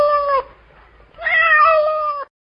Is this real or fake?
real